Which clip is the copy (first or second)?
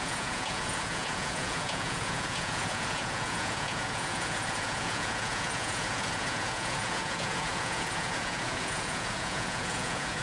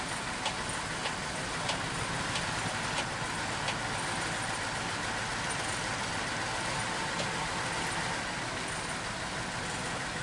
first